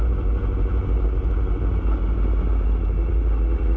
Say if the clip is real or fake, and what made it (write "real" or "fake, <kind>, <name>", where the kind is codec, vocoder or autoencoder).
real